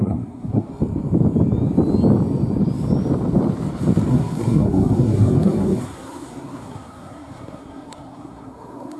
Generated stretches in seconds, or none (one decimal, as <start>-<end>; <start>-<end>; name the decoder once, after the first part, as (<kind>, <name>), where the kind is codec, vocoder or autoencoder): 0.0-0.7 (codec, SNAC); 4.1-9.0